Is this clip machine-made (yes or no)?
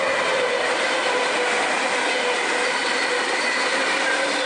no